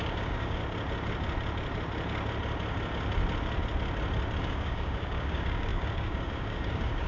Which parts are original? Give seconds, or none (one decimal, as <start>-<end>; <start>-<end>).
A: 0.6-4.4